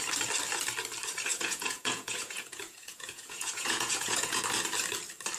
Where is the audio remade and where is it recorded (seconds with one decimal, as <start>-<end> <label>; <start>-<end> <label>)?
0.0-1.3 recorded; 1.3-4.4 remade; 4.4-5.4 recorded